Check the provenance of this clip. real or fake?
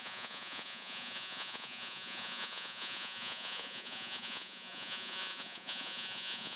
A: fake